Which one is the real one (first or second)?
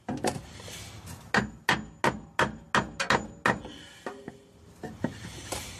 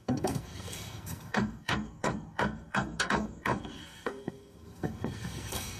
first